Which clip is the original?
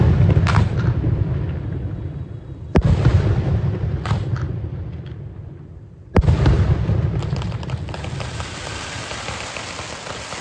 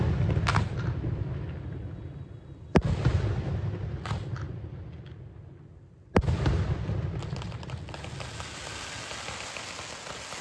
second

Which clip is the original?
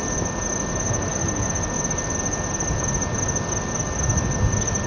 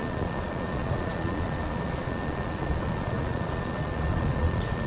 first